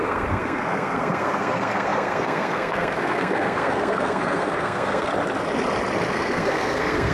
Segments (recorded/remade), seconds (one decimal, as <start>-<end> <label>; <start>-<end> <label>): 0.0-5.1 remade; 5.1-6.1 recorded; 6.1-7.1 remade